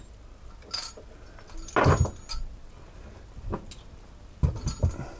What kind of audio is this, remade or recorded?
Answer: recorded